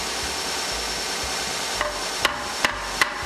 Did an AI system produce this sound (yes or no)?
no